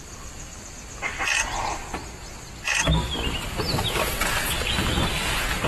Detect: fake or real real